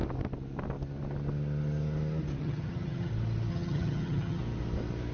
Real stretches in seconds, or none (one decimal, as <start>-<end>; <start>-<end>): 0.0-2.4; 3.1-3.5; 4.4-5.1